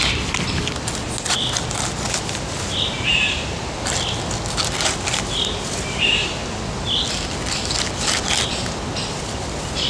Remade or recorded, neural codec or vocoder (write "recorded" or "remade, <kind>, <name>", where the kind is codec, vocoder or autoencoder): recorded